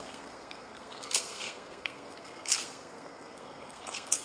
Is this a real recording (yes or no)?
no